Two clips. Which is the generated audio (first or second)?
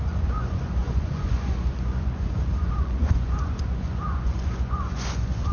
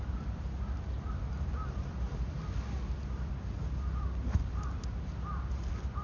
first